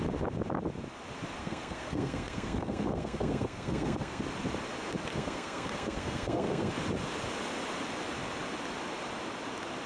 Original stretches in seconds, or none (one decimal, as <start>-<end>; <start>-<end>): 0.0-1.4; 4.2-5.1; 6.7-9.9